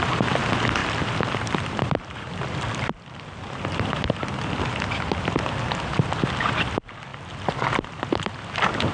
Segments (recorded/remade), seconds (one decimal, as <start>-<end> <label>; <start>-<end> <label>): 0.0-0.8 recorded; 0.8-5.5 remade; 5.5-8.9 recorded